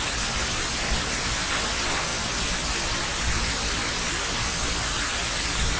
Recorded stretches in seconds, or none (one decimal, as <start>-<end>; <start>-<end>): 0.0-5.8